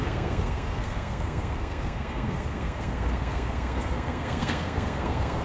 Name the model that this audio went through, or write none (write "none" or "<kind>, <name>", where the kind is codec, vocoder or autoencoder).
codec, SNAC